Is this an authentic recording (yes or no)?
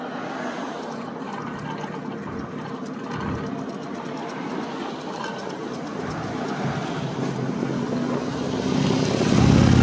yes